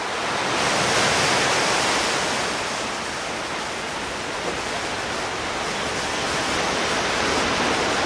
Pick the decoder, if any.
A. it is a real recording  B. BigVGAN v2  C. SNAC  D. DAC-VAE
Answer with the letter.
A